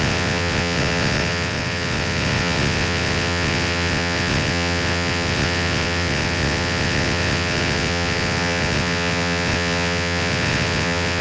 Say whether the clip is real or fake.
fake